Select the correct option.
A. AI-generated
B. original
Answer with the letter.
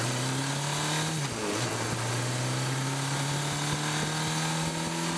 B